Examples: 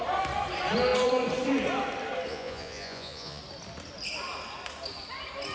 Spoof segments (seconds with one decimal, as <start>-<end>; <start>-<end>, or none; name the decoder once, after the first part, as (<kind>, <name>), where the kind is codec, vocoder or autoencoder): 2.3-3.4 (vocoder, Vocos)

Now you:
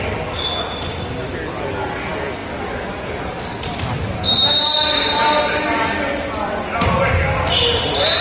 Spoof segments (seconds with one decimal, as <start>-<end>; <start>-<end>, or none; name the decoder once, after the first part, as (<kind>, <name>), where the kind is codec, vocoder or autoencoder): none

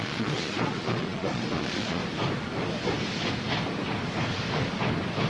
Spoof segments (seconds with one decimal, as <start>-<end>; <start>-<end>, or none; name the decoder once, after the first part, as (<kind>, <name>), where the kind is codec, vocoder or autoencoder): 0.0-2.0 (vocoder, Vocos)

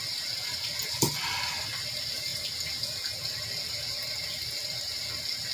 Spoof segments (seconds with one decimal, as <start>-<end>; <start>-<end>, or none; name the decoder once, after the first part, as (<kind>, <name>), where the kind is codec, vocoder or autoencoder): none